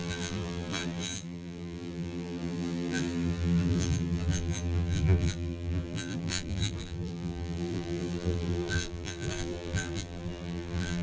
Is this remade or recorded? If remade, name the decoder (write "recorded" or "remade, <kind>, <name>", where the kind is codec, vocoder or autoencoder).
remade, vocoder, BigVGAN v2